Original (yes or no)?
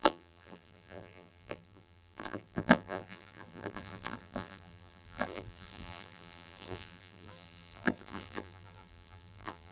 no